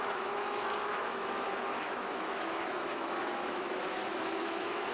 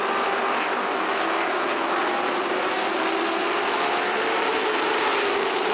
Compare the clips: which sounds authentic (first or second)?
second